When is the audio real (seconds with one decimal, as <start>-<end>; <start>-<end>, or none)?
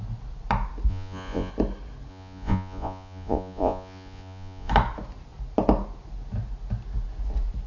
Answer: 0.0-0.9; 1.5-2.1; 4.7-7.7